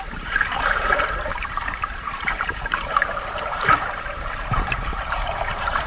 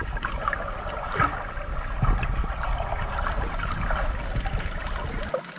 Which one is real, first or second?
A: second